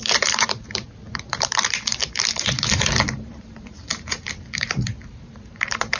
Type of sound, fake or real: fake